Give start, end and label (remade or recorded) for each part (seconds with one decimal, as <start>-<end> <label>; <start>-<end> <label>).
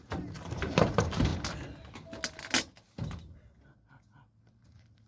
0.0-1.3 remade; 1.3-4.4 recorded; 4.4-5.1 remade